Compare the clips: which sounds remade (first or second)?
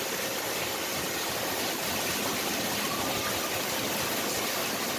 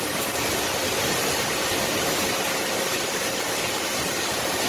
second